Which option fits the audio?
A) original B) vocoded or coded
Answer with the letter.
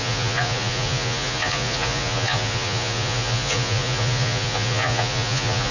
B